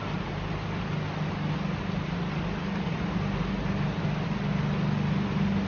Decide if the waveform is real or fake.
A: real